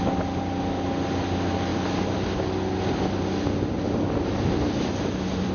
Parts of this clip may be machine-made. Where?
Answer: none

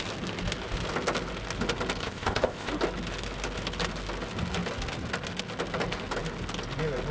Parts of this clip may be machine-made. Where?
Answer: 2.0-2.7

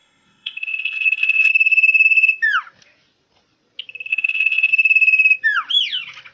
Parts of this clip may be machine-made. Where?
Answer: 0.0-1.5; 4.1-4.7

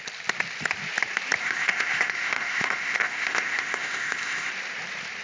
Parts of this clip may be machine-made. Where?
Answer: 1.4-4.5

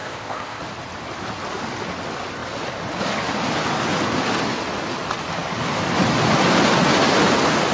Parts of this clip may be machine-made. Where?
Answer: 0.0-0.6

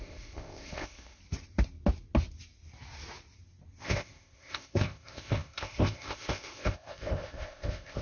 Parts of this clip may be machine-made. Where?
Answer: 0.0-1.2; 3.8-8.0